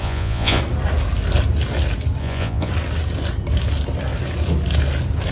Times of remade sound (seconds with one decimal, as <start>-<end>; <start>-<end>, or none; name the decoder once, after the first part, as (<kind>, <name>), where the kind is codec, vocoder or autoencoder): 0.0-0.6 (vocoder, Vocos); 2.2-2.7